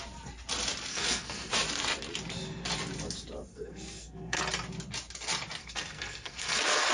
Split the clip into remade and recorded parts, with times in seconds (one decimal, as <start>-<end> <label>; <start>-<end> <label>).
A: 0.0-0.9 recorded; 0.9-1.5 remade; 1.5-3.5 recorded; 3.5-4.4 remade; 4.4-5.6 recorded; 5.6-6.9 remade

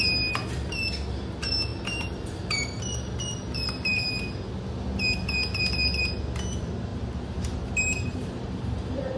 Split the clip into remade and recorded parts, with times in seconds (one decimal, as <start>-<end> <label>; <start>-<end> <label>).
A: 0.0-1.7 recorded; 1.7-2.8 remade; 2.8-6.9 recorded; 6.9-9.2 remade

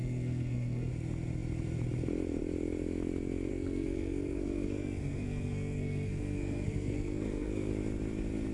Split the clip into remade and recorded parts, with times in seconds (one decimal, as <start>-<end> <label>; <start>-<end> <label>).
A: 0.0-0.9 remade; 0.9-3.5 recorded; 3.5-7.7 remade; 7.7-8.5 recorded

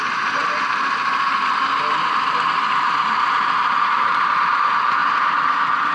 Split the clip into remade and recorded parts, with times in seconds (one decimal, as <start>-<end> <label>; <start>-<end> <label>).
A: 0.0-5.9 recorded

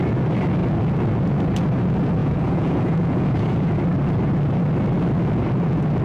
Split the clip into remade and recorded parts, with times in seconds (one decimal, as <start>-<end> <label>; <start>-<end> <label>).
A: 0.0-2.2 recorded; 2.2-3.8 remade; 3.8-6.0 recorded

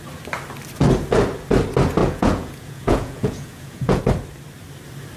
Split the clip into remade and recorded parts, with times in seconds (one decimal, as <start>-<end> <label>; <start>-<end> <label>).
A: 0.0-2.0 recorded; 2.0-4.0 remade; 4.0-5.2 recorded

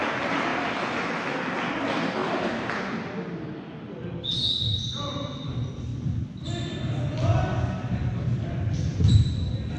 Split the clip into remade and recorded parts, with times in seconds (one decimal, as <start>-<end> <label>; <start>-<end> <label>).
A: 0.0-0.5 remade; 0.5-1.8 recorded; 1.8-2.2 remade; 2.2-4.6 recorded; 4.6-5.9 remade; 5.9-8.5 recorded; 8.5-9.8 remade

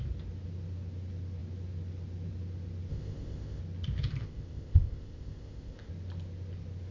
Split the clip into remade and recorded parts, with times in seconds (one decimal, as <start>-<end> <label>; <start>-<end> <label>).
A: 0.0-2.9 recorded; 2.9-3.6 remade; 3.6-4.2 recorded; 4.2-5.9 remade; 5.9-6.9 recorded